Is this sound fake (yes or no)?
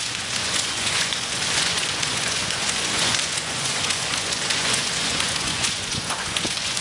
yes